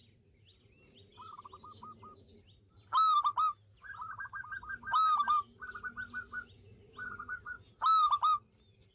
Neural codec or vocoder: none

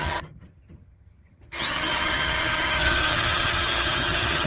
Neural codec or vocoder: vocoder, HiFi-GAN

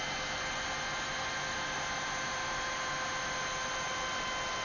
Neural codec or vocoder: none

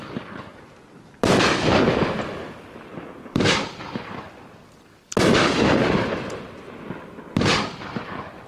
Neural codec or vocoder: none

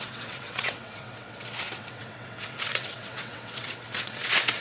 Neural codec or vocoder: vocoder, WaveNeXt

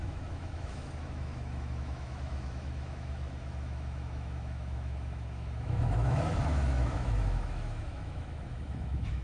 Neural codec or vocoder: autoencoder, DAC-VAE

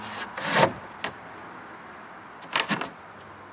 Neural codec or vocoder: none